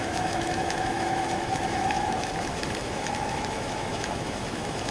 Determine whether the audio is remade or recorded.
remade